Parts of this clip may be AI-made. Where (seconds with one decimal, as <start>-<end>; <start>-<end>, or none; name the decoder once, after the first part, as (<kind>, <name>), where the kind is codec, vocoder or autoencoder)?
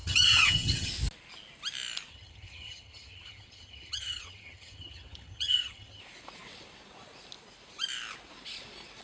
0.0-0.9 (vocoder, HiFi-GAN); 2.1-6.0